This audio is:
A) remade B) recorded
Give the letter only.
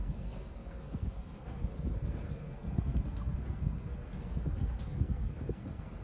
A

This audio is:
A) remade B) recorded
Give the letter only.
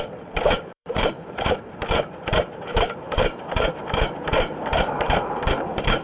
A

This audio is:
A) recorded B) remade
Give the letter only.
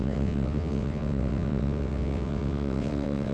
B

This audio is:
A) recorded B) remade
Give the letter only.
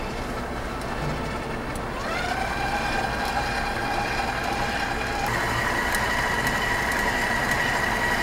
A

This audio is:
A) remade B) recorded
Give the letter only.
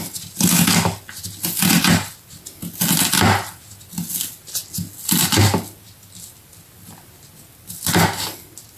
B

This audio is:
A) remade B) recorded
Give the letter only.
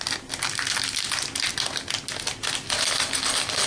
B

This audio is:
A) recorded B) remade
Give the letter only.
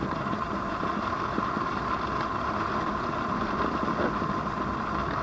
B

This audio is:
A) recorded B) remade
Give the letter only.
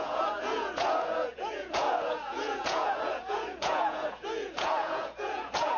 B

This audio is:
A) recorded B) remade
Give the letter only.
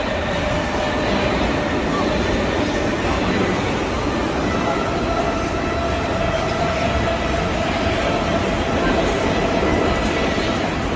A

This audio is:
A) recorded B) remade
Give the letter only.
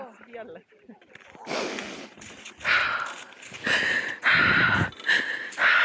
A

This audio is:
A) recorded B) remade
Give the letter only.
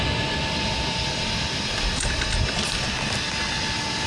A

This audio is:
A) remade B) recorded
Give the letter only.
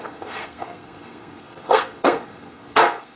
A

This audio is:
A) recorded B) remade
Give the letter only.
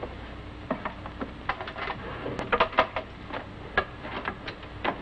A